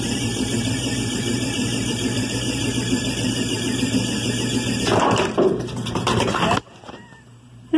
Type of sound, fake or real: fake